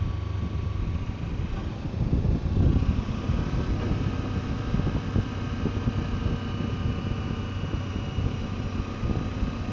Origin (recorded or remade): recorded